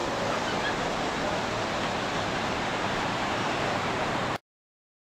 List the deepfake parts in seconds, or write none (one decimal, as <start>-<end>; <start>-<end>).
2.2-5.1